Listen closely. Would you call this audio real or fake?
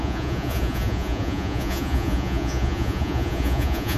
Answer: fake